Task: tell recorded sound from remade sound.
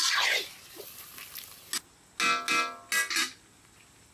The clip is recorded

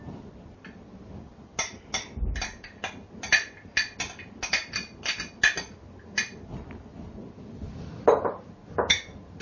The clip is recorded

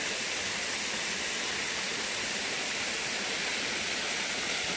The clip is recorded